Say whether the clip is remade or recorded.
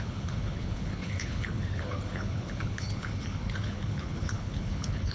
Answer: remade